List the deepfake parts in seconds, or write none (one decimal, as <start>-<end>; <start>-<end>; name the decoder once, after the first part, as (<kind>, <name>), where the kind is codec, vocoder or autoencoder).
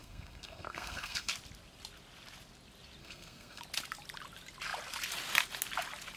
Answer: 0.0-1.3 (codec, SNAC); 3.0-3.6